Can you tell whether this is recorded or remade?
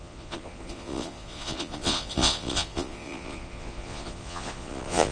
remade